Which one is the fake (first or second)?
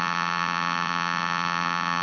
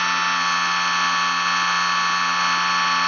first